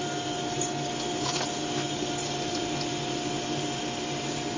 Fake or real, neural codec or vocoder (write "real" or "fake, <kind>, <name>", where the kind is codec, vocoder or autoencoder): real